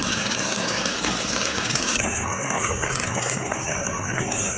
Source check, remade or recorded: remade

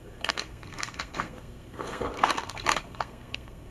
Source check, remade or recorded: remade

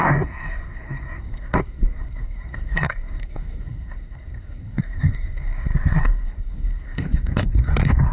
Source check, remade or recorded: remade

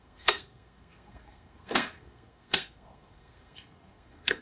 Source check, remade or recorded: remade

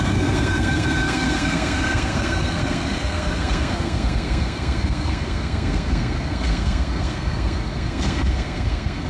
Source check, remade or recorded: remade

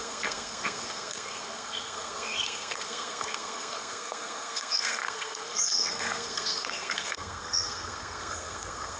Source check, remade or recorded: remade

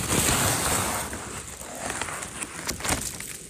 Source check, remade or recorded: recorded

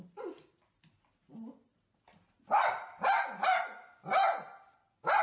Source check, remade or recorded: recorded